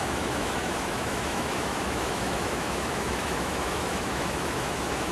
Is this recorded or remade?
remade